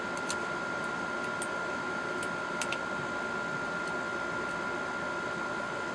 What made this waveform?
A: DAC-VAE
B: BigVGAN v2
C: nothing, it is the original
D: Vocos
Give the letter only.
C